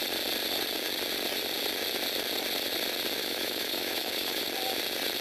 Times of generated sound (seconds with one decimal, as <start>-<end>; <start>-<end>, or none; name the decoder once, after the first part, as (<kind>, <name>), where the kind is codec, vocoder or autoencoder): 3.2-4.4 (autoencoder, DAC-VAE)